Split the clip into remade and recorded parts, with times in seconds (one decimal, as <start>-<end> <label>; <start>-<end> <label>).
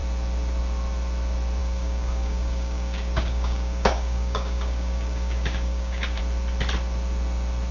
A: 0.0-1.6 recorded; 1.6-6.2 remade; 6.2-7.7 recorded